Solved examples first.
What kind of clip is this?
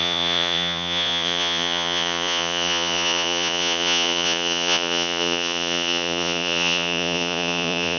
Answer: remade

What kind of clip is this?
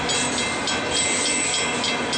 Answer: recorded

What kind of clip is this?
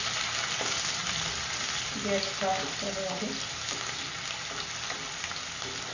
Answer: recorded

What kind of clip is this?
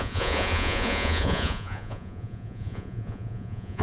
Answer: remade